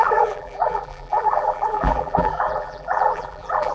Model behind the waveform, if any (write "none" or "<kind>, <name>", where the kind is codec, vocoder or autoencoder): vocoder, BigVGAN v2